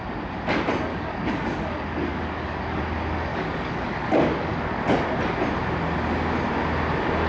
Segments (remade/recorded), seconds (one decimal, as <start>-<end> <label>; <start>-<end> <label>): 0.0-0.9 recorded; 0.9-2.8 remade; 2.8-3.3 recorded; 3.3-4.8 remade; 4.8-7.3 recorded